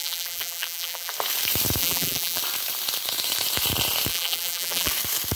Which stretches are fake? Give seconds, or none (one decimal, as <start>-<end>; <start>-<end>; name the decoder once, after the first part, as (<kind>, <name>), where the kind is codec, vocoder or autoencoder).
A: 0.0-1.1 (vocoder, BigVGAN v2); 1.8-2.4; 4.1-4.9